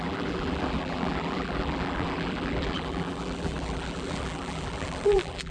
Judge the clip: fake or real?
fake